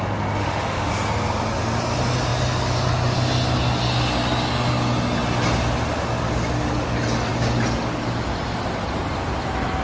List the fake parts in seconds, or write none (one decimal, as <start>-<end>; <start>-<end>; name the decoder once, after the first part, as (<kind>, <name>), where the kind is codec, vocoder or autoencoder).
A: 0.4-0.9 (autoencoder, DAC-VAE)